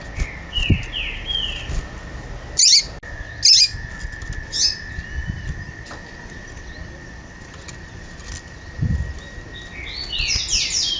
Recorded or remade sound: recorded